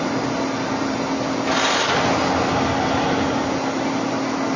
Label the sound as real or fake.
real